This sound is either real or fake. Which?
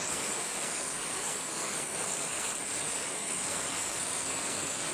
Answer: fake